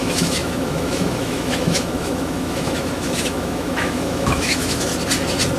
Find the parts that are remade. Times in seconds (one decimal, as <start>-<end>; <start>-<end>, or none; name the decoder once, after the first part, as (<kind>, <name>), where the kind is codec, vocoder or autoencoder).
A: 0.0-4.9 (autoencoder, DAC-VAE)